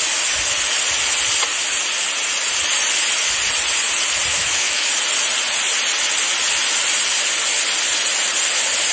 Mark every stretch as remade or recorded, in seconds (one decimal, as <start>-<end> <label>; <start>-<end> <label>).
0.0-4.3 recorded; 4.3-4.9 remade; 4.9-8.9 recorded